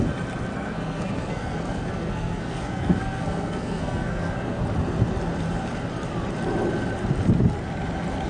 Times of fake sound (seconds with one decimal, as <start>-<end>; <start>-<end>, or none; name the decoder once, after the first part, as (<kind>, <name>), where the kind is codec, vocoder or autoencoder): 0.5-4.6 (codec, SNAC)